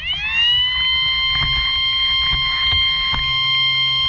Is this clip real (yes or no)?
yes